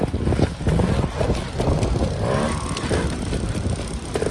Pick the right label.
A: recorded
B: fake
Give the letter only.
A